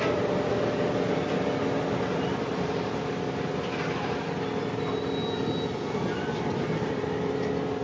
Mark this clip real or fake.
real